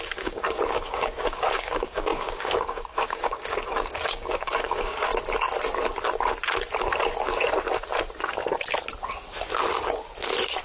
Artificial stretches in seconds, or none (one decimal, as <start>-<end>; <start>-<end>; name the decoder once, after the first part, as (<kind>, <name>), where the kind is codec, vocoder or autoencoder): 0.0-5.1 (codec, DAC)

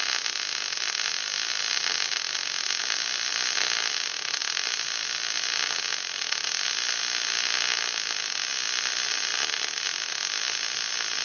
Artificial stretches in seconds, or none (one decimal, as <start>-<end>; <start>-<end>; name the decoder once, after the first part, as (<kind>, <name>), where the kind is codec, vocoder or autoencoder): none

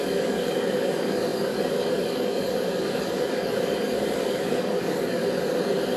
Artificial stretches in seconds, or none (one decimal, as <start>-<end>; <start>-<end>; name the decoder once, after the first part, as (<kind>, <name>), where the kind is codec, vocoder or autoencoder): 0.0-5.2 (codec, DAC)